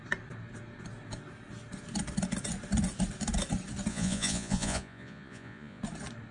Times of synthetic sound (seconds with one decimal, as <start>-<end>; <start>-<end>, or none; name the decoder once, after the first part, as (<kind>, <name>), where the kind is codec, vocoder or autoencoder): 3.9-5.8 (vocoder, Vocos)